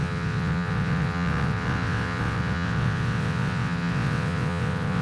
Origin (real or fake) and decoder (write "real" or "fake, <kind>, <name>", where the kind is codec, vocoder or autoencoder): fake, vocoder, WaveNeXt